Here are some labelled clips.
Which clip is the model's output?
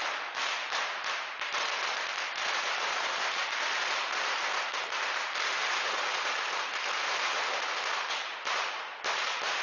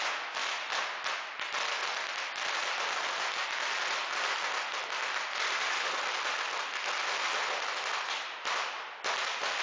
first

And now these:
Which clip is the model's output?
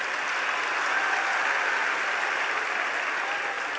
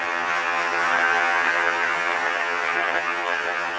second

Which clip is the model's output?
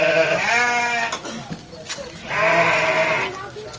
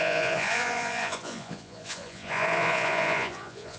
second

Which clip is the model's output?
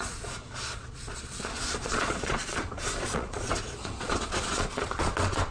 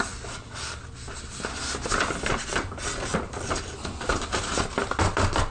first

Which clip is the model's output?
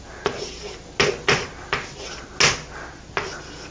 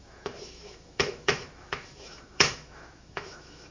second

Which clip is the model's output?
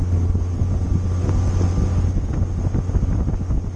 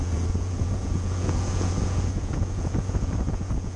second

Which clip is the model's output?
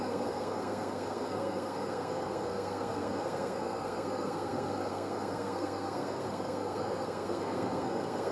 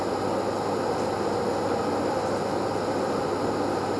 first